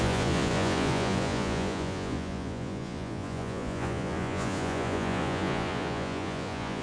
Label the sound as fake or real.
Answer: fake